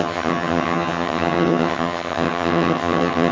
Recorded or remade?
remade